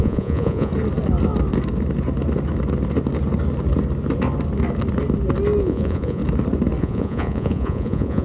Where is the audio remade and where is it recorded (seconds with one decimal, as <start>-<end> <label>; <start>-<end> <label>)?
0.0-0.7 remade; 0.7-5.6 recorded; 5.6-6.2 remade; 6.2-6.8 recorded; 6.8-8.2 remade